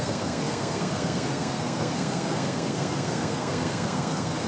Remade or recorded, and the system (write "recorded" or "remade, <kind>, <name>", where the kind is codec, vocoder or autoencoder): remade, codec, SNAC